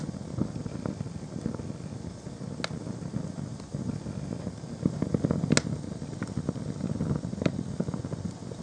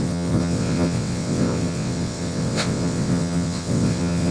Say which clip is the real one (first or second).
first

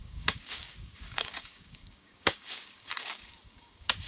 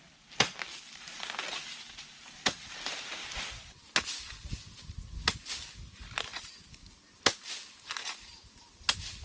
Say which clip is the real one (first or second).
second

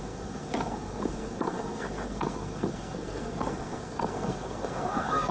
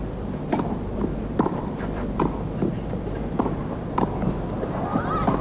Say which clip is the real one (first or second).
second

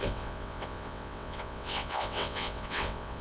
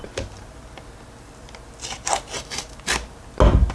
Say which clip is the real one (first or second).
second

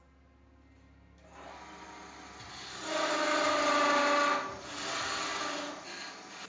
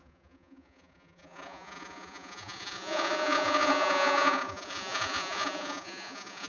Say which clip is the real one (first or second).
first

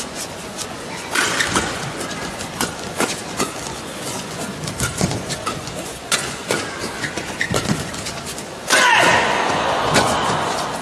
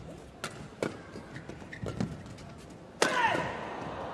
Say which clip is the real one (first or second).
second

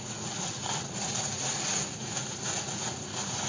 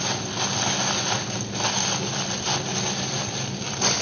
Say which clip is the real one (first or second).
second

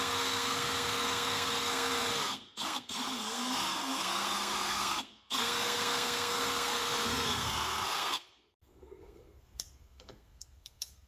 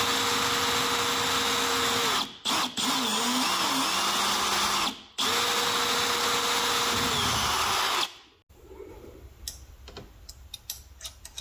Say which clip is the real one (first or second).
second